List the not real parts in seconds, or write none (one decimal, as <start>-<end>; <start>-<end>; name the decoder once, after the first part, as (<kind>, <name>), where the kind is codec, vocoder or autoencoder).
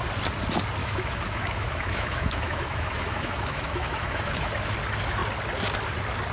0.8-4.5 (autoencoder, DAC-VAE)